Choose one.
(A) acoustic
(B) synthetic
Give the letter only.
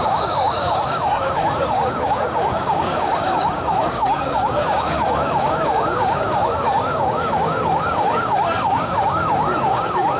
B